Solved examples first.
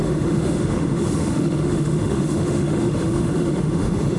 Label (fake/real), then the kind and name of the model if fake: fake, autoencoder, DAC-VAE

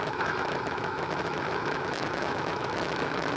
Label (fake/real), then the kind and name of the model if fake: fake, autoencoder, DAC-VAE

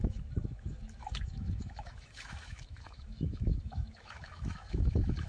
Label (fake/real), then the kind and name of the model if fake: fake, autoencoder, DAC-VAE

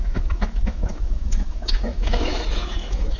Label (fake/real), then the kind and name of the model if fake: fake, autoencoder, DAC-VAE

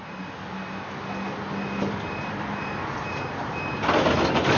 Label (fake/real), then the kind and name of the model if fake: real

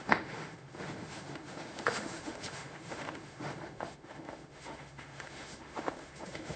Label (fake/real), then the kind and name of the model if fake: fake, autoencoder, DAC-VAE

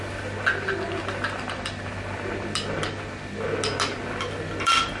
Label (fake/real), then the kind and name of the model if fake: real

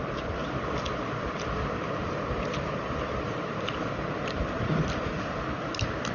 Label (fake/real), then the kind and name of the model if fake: real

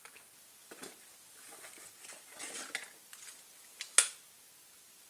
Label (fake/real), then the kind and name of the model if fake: real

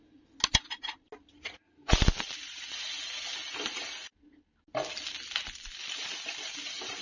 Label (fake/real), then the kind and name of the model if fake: real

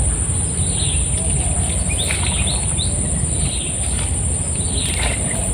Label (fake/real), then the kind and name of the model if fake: real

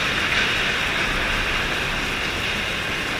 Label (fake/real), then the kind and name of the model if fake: real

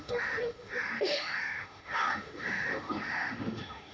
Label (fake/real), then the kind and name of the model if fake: fake, autoencoder, DAC-VAE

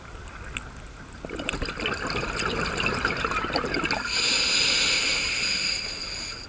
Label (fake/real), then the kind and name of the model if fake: real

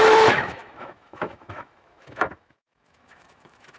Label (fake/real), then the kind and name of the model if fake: fake, autoencoder, DAC-VAE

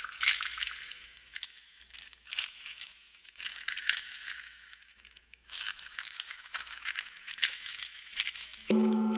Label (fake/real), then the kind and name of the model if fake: fake, autoencoder, DAC-VAE